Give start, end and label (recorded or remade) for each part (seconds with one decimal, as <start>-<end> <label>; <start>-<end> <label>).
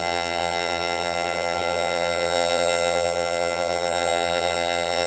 0.0-5.1 remade